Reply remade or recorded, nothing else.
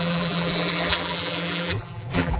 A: remade